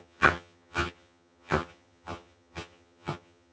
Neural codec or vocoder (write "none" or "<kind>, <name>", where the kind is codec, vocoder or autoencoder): vocoder, HiFi-GAN